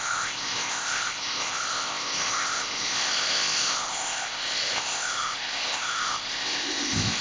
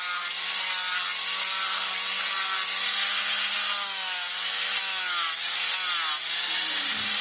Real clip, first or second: second